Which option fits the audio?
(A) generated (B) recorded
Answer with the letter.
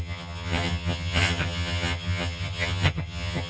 A